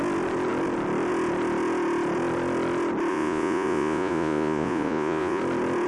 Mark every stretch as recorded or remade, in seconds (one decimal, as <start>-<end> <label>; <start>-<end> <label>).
0.0-3.1 recorded; 3.1-5.4 remade; 5.4-5.9 recorded